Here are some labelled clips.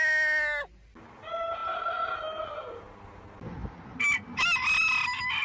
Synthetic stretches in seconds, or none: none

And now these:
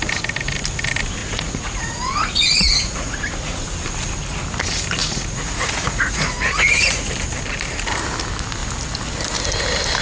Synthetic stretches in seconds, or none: 1.2-3.7 (vocoder, Vocos); 5.0-7.1

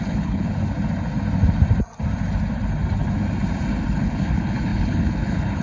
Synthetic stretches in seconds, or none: 0.0-0.5 (codec, HILCodec); 3.9-5.6

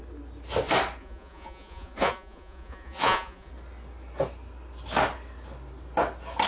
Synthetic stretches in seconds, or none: 1.0-3.5 (vocoder, Vocos)

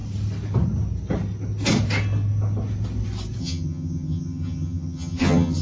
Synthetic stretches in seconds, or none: 3.4-5.6 (vocoder, HiFi-GAN)

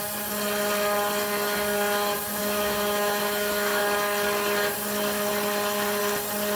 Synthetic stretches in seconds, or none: 2.4-3.8 (autoencoder, DAC-VAE)

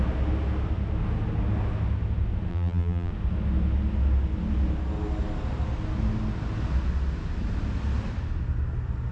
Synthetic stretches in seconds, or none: 2.5-3.1 (vocoder, BigVGAN v2)